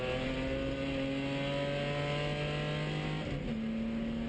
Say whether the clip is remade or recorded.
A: recorded